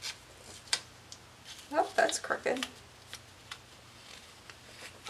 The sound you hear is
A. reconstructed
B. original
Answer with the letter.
B